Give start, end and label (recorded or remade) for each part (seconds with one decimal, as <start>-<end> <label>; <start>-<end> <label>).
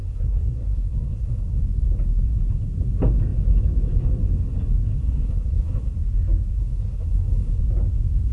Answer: 0.0-1.6 remade; 1.6-5.0 recorded; 5.0-5.9 remade; 5.9-6.6 recorded; 6.6-7.6 remade; 7.6-8.3 recorded